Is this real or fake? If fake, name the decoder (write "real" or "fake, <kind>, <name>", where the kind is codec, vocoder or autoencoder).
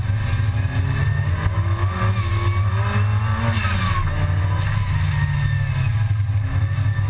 real